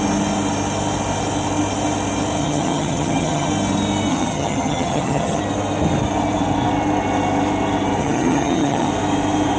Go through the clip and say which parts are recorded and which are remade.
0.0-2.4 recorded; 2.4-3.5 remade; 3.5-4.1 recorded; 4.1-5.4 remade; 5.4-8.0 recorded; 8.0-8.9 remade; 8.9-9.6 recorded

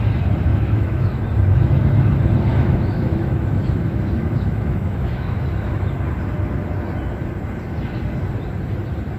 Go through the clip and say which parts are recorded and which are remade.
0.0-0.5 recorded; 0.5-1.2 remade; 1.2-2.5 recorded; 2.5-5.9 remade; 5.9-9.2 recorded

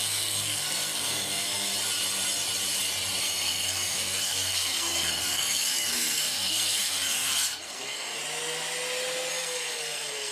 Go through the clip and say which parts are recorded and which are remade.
0.0-1.7 remade; 1.7-3.2 recorded; 3.2-8.2 remade; 8.2-9.3 recorded; 9.3-10.3 remade

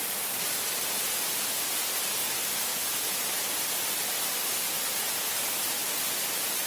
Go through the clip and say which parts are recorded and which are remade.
0.0-6.7 remade

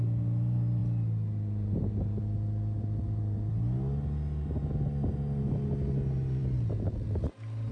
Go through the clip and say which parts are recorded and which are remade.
0.0-7.7 recorded

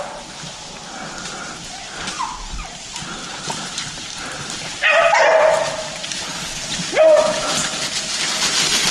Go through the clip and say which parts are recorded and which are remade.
0.0-8.9 recorded